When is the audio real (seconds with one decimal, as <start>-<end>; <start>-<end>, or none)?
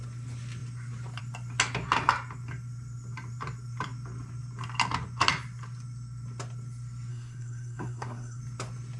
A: 0.0-7.1; 8.4-9.0